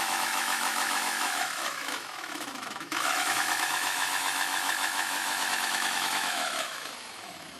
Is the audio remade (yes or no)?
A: yes